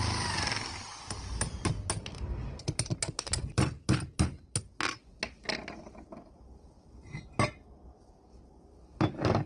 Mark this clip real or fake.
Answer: real